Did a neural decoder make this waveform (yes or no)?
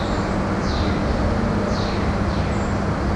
no